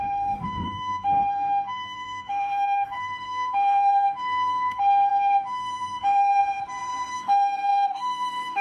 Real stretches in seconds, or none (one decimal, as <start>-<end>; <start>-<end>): 6.4-7.1